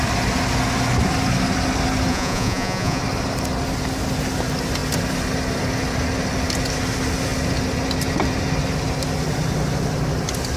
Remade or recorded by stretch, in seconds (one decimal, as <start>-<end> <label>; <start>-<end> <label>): 0.0-2.1 recorded; 2.1-3.0 remade; 3.0-10.6 recorded